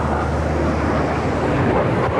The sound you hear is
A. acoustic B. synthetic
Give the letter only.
A